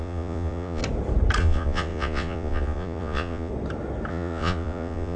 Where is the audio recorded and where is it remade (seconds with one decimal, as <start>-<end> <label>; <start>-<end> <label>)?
0.0-0.8 remade; 0.8-1.4 recorded; 1.4-3.5 remade; 3.5-4.1 recorded; 4.1-5.2 remade